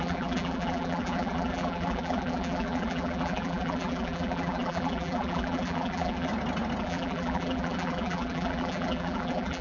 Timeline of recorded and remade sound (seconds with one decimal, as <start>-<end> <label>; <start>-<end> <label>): 0.0-6.3 remade; 6.3-6.8 recorded; 6.8-9.6 remade